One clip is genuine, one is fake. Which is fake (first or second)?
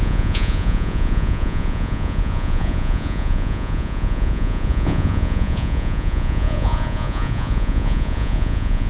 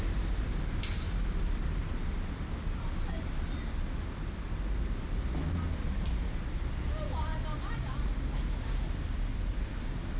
first